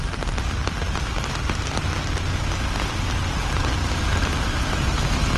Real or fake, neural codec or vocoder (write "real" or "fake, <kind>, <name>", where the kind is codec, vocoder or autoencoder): real